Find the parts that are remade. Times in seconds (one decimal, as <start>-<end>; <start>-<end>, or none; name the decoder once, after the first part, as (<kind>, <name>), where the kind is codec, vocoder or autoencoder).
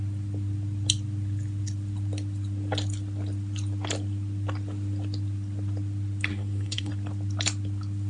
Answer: 6.3-6.9 (codec, SNAC)